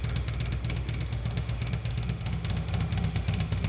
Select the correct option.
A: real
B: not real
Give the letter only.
B